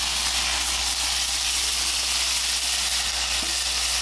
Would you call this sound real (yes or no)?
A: yes